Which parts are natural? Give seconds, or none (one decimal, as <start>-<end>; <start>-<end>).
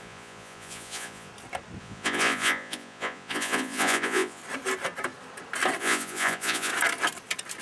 1.3-1.8; 4.4-5.8; 6.7-7.6